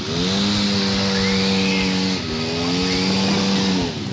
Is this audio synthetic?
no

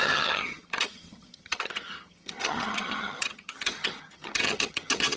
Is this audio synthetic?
yes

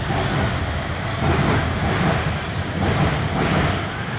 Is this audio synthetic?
no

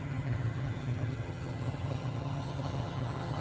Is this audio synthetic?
yes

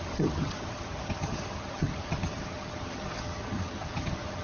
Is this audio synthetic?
yes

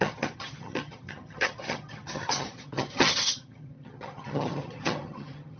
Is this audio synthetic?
yes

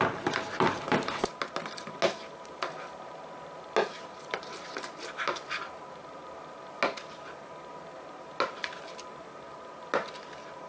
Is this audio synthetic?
no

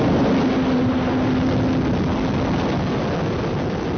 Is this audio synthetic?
no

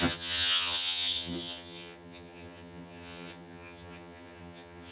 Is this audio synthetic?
yes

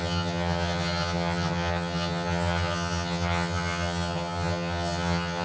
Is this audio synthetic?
yes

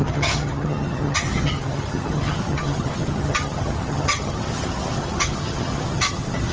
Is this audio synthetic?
yes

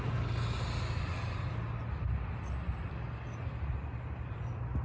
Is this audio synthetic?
no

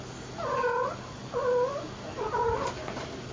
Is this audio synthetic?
no